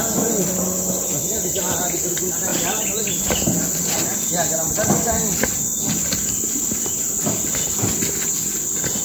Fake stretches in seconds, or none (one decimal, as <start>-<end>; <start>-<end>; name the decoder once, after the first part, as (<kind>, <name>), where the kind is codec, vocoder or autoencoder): 2.5-3.1 (vocoder, BigVGAN v2)